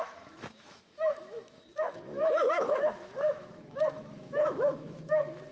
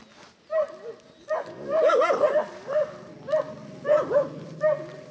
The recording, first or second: second